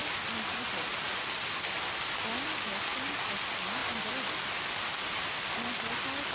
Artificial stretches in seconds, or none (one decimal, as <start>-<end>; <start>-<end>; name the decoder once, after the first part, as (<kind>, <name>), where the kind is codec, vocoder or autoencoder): none